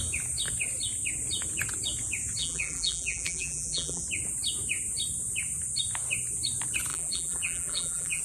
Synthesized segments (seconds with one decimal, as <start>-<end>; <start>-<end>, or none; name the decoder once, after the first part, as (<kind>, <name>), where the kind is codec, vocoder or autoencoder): 2.4-4.0 (vocoder, BigVGAN v2); 6.9-8.2